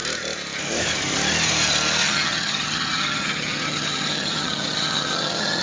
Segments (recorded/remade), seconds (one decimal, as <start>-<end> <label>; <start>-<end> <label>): 0.0-2.0 recorded; 2.0-5.6 remade